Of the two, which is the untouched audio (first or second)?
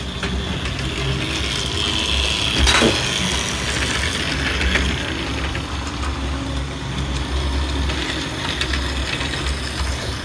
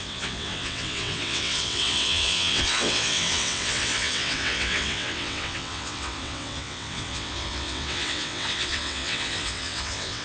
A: first